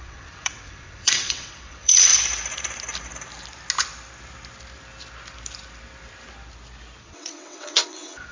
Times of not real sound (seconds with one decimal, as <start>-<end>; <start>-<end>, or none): 0.0-2.1; 7.0-8.3